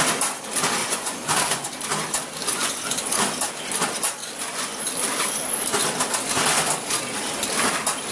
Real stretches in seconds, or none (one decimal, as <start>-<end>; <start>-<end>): 0.0-0.8; 1.7-2.4; 3.3-4.2; 4.8-8.1